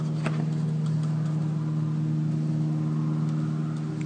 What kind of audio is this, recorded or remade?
recorded